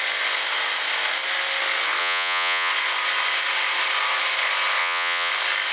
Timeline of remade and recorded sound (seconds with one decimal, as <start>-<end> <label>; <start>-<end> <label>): 0.0-2.0 recorded; 2.0-2.7 remade; 2.7-4.8 recorded; 4.8-5.3 remade; 5.3-5.7 recorded

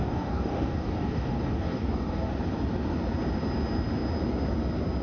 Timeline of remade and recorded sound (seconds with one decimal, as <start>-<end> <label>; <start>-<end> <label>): 0.0-2.3 remade; 2.3-5.0 recorded

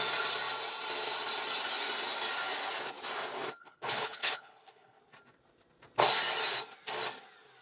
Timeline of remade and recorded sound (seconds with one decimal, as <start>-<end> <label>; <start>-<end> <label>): 0.0-3.6 recorded; 3.6-5.0 remade; 5.0-7.6 recorded

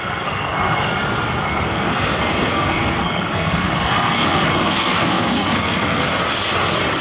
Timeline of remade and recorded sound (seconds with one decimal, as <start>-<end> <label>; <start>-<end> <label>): 0.0-0.9 remade; 0.9-1.4 recorded; 1.4-6.1 remade; 6.1-7.0 recorded

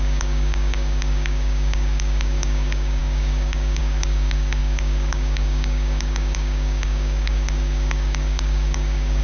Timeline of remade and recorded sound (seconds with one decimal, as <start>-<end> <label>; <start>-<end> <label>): 0.0-9.2 remade

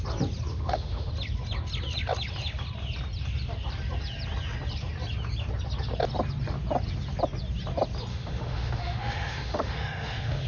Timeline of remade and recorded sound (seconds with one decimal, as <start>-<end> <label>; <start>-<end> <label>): 0.0-0.5 recorded; 0.5-1.1 remade; 1.1-8.1 recorded; 8.1-10.5 remade

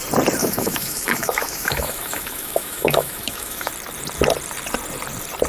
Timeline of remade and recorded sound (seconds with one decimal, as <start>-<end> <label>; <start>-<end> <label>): 0.0-0.4 recorded; 0.4-3.7 remade; 3.7-5.5 recorded